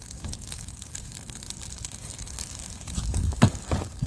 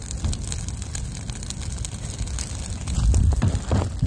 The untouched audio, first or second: second